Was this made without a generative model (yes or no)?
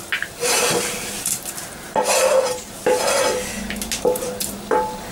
yes